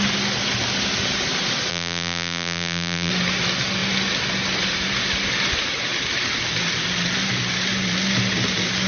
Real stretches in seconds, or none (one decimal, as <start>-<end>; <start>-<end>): 0.0-1.7; 3.1-8.9